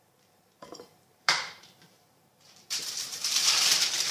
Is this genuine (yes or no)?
no